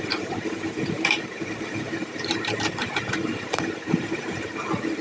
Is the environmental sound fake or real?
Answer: fake